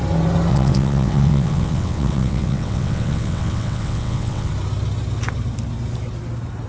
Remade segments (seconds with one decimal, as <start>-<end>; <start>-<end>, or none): 0.5-4.5